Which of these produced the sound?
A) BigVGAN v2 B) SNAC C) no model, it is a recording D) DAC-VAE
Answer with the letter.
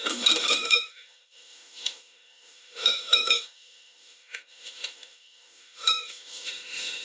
D